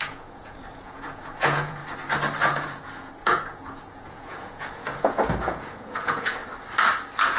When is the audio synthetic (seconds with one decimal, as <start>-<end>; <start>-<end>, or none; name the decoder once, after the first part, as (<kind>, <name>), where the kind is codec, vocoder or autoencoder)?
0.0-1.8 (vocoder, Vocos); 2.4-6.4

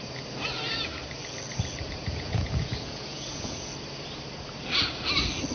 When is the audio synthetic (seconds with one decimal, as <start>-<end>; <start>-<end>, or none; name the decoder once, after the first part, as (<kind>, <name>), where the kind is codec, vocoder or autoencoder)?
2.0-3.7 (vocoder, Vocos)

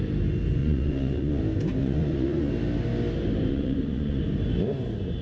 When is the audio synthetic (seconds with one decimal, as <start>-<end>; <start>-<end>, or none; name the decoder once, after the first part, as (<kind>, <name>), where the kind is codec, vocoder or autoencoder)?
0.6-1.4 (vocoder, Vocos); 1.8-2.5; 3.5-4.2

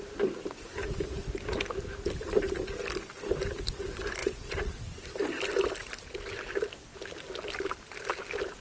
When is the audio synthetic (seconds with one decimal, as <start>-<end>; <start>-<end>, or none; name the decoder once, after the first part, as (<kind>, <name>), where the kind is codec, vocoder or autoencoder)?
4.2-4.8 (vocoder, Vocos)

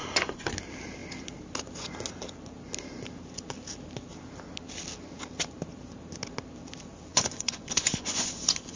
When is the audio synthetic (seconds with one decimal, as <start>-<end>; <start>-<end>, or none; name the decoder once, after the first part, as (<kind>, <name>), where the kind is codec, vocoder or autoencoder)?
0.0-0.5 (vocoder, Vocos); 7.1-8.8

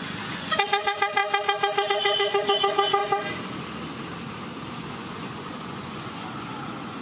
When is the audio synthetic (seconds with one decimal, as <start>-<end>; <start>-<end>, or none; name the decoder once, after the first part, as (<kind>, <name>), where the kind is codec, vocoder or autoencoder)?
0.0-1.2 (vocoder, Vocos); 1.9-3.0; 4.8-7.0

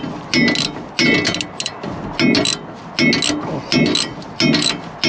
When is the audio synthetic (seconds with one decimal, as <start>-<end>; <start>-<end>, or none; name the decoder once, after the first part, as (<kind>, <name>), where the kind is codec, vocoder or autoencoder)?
none

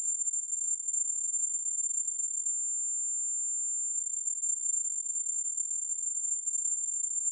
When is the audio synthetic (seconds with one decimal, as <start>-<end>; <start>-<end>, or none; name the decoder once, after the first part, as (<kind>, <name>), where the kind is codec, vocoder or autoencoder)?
0.0-2.5 (vocoder, Vocos); 3.9-7.3